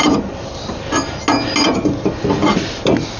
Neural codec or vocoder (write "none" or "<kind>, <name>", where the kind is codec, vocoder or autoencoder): none